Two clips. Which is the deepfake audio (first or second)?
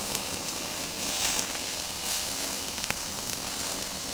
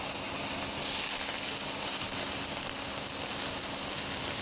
first